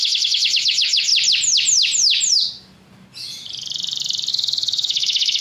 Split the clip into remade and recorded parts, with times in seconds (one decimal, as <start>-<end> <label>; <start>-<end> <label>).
0.0-1.1 remade; 1.1-4.3 recorded; 4.3-5.4 remade